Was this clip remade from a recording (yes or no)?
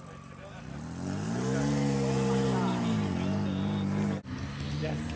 no